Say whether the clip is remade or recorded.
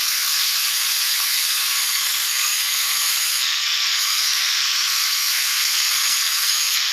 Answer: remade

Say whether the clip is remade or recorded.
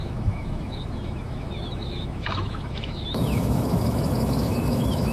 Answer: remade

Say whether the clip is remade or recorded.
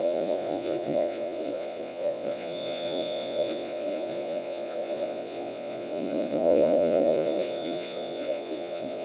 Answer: remade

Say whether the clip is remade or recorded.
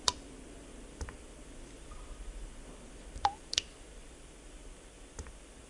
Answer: remade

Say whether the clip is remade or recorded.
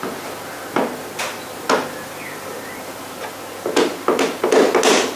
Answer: recorded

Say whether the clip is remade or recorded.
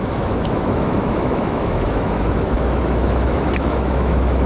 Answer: remade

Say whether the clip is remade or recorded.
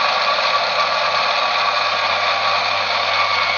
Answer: recorded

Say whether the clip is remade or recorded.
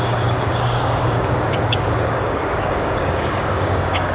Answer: remade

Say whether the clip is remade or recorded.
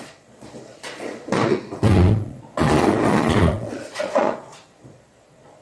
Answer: remade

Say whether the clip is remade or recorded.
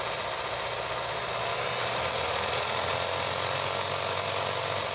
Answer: recorded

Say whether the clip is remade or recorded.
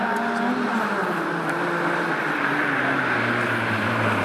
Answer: recorded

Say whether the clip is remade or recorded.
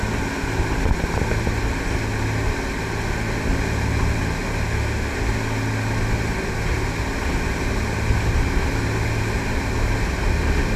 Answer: recorded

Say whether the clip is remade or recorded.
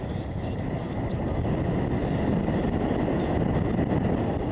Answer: recorded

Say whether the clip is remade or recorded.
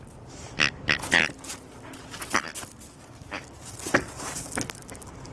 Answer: recorded